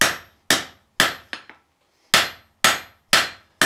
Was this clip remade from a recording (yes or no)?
no